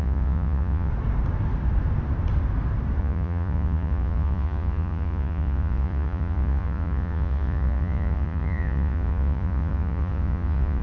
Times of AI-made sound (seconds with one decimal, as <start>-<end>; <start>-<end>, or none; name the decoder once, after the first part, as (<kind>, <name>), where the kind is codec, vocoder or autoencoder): 0.0-0.9 (vocoder, Vocos); 3.0-10.8

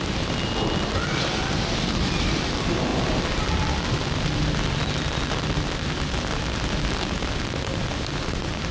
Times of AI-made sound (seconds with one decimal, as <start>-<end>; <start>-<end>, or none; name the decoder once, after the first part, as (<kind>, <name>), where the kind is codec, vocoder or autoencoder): none